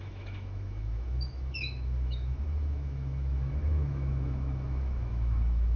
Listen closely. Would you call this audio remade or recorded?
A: remade